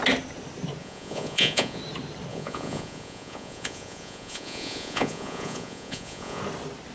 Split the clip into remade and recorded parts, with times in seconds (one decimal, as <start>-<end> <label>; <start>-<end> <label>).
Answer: 0.0-0.8 recorded; 0.8-1.8 remade; 1.8-2.3 recorded; 2.3-6.4 remade; 6.4-6.9 recorded